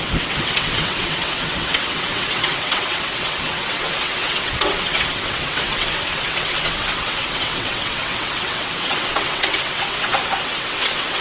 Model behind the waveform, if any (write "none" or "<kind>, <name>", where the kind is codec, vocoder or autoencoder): vocoder, WaveNeXt